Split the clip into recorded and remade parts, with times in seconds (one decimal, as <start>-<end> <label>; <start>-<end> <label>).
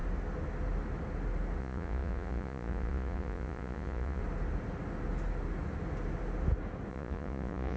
0.0-1.6 recorded; 1.6-4.2 remade; 4.2-6.9 recorded; 6.9-7.8 remade